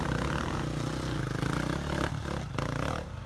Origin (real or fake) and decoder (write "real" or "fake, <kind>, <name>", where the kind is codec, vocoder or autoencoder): real